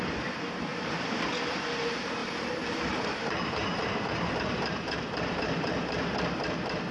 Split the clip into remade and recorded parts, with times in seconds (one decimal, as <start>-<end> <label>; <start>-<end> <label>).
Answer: 0.0-0.7 recorded; 0.7-1.3 remade; 1.3-2.2 recorded; 2.2-6.3 remade; 6.3-6.9 recorded